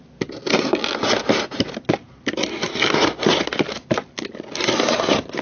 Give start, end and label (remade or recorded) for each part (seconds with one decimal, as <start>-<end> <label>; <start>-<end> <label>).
0.0-5.4 recorded